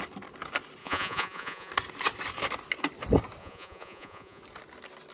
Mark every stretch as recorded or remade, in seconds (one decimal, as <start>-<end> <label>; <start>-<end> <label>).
0.0-0.8 recorded; 0.8-1.7 remade; 1.7-3.4 recorded; 3.4-4.4 remade; 4.4-5.1 recorded